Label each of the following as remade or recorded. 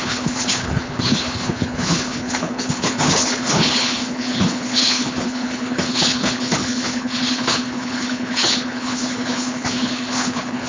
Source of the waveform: remade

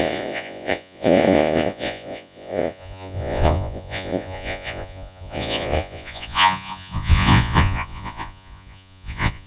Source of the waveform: remade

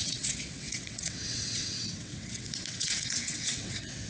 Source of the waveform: remade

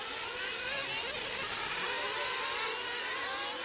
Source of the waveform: recorded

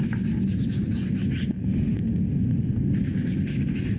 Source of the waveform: recorded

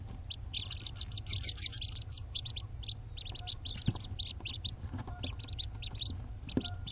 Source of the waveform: recorded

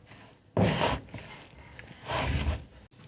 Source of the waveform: recorded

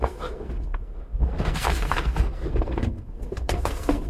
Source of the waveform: remade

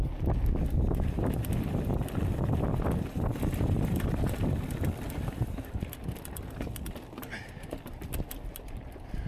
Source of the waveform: recorded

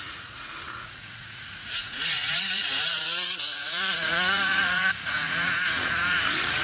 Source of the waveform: remade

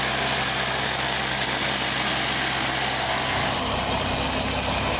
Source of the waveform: recorded